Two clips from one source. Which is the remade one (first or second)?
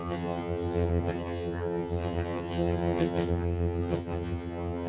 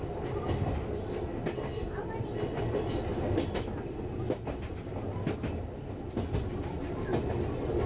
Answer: first